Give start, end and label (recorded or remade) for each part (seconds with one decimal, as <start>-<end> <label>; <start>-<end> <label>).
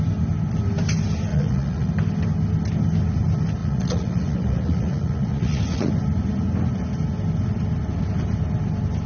0.0-1.3 recorded; 1.3-1.9 remade; 1.9-3.6 recorded; 3.6-5.9 remade; 5.9-9.1 recorded